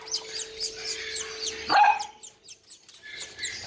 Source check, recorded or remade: recorded